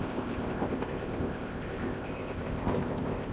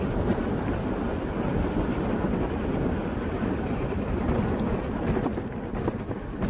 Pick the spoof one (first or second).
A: first